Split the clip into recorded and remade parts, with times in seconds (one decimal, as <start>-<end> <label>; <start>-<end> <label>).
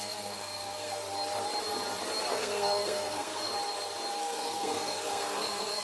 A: 0.0-1.0 remade; 1.0-2.3 recorded; 2.3-3.5 remade; 3.5-4.2 recorded; 4.2-5.8 remade